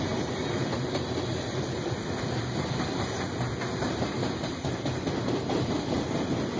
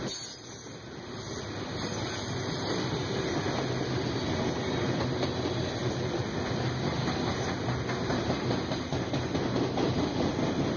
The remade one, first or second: first